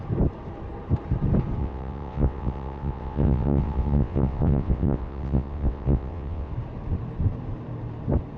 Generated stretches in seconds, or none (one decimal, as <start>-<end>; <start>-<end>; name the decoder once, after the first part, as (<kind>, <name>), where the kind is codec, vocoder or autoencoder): 1.6-6.5 (vocoder, WaveNeXt)